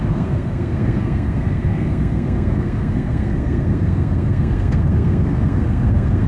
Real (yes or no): no